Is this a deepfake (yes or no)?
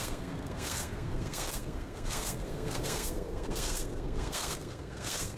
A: yes